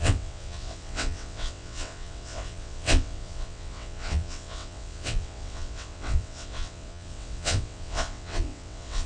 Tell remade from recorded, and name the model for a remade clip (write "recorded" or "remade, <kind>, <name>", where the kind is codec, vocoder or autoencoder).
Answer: remade, vocoder, WaveNeXt